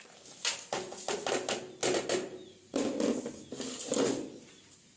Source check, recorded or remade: recorded